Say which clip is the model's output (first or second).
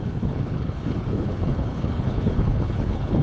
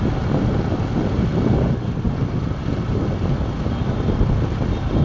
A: first